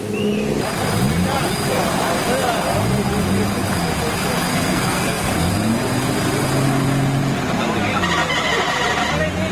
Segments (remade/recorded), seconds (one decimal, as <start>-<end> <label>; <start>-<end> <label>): 0.0-4.5 recorded; 4.5-5.5 remade; 5.5-9.5 recorded